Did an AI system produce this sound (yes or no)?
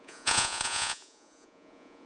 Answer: yes